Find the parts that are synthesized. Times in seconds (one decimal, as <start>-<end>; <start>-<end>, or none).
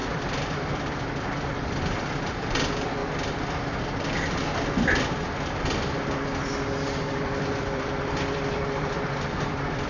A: 0.0-3.0; 7.2-9.9